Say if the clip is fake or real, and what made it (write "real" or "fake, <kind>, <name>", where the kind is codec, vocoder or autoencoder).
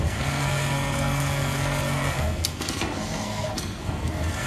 fake, codec, SNAC